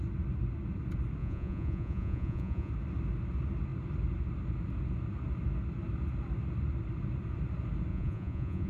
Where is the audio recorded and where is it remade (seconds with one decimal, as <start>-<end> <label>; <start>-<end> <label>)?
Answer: 0.0-1.2 recorded; 1.2-2.7 remade; 2.7-7.9 recorded; 7.9-8.7 remade